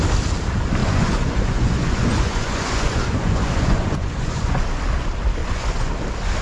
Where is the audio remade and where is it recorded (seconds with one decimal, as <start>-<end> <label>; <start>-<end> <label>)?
0.0-0.8 recorded; 0.8-4.6 remade; 4.6-5.4 recorded; 5.4-5.9 remade; 5.9-6.4 recorded